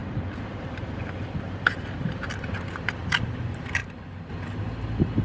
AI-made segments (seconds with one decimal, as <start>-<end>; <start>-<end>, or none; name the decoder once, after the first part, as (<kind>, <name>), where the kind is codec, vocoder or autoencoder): 2.4-3.8 (vocoder, BigVGAN v2); 4.3-5.2